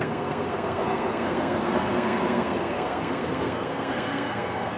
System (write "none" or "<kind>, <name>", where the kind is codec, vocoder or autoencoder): codec, SNAC